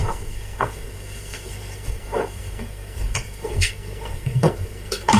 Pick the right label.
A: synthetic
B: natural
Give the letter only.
A